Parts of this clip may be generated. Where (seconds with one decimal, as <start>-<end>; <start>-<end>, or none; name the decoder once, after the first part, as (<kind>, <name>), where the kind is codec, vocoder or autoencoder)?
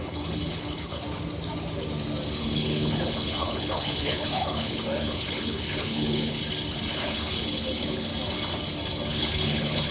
0.0-1.0 (codec, HILCodec); 2.4-6.4; 6.9-8.1; 9.1-9.9